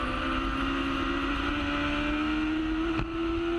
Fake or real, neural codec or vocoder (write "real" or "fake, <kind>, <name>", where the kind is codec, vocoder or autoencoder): real